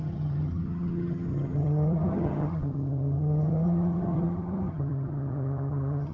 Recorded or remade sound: remade